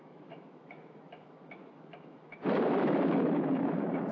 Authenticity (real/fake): fake